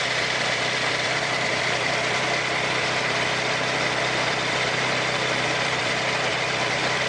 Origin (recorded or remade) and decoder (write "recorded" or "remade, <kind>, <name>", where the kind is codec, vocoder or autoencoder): remade, vocoder, BigVGAN v2